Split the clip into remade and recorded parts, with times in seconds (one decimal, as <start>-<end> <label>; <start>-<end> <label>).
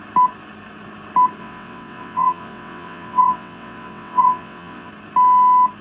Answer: 0.0-1.4 recorded; 1.4-4.9 remade; 4.9-5.8 recorded